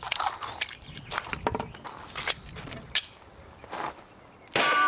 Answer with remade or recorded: remade